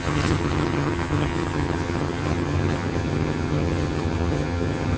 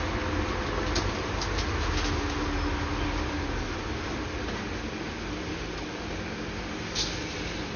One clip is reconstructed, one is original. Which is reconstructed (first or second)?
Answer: first